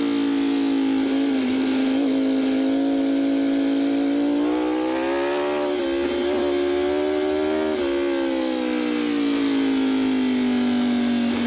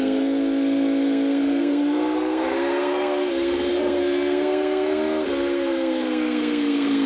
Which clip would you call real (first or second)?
first